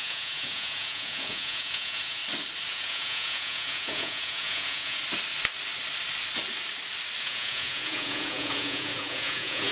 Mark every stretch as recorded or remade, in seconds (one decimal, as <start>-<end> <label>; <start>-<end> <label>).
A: 0.0-2.2 remade; 2.2-2.7 recorded; 2.7-5.0 remade; 5.0-7.2 recorded; 7.2-9.7 remade

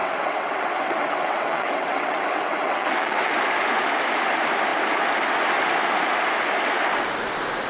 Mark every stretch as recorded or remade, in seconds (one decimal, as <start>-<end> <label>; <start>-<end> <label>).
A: 0.0-3.3 remade; 3.3-7.7 recorded

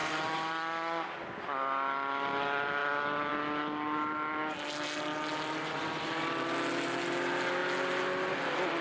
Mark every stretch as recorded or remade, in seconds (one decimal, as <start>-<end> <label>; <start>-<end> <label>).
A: 0.0-0.5 remade; 0.5-8.8 recorded